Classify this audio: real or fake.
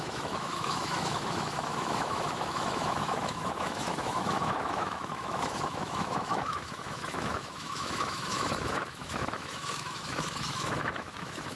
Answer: fake